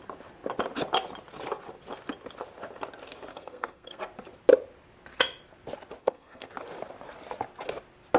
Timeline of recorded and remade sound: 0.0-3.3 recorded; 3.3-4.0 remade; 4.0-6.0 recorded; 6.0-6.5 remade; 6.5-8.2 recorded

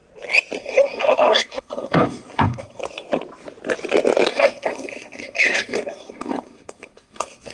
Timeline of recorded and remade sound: 0.0-0.6 recorded; 0.6-2.8 remade; 2.8-4.3 recorded; 4.3-7.5 remade